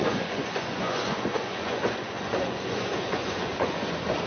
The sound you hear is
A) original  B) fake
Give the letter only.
B